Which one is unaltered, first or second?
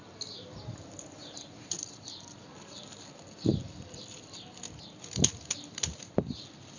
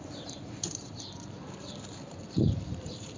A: first